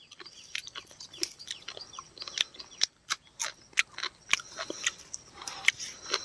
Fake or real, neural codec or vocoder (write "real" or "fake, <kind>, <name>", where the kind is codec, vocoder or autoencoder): real